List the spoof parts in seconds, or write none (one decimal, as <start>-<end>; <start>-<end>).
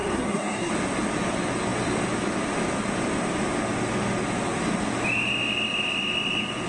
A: 0.0-0.7